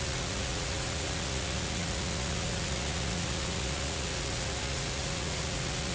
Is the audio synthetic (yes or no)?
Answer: yes